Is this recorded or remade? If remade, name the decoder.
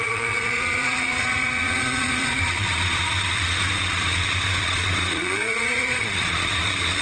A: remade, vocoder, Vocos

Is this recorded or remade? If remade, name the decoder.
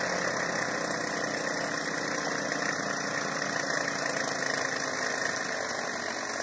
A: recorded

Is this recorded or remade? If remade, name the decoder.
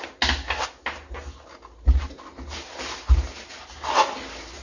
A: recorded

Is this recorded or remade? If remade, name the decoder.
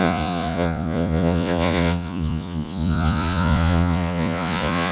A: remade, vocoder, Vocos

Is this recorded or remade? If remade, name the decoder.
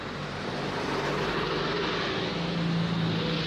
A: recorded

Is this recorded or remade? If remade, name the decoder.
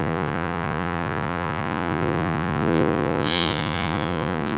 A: remade, vocoder, Vocos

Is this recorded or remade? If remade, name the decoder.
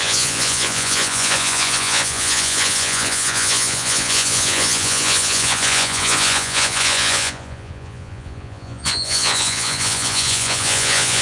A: remade, vocoder, Vocos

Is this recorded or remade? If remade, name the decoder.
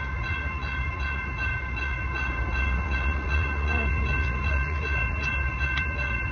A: remade, vocoder, Vocos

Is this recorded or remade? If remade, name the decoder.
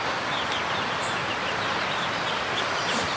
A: recorded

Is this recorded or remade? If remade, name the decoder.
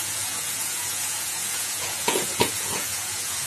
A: remade, vocoder, Vocos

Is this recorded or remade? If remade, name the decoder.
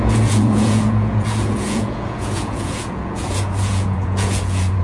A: remade, vocoder, Vocos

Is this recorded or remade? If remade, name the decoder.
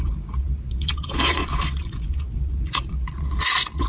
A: remade, vocoder, Vocos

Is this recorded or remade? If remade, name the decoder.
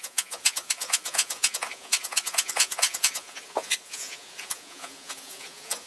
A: remade, vocoder, Vocos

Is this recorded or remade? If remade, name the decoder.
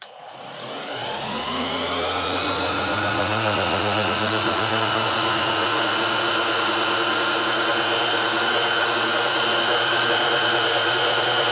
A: remade, vocoder, Vocos